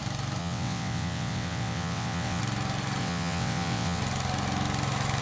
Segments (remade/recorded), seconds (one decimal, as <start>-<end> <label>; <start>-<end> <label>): 0.0-0.4 recorded; 0.4-2.4 remade; 2.4-3.0 recorded; 3.0-4.0 remade; 4.0-5.2 recorded